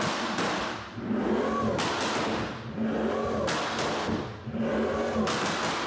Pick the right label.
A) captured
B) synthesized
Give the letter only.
A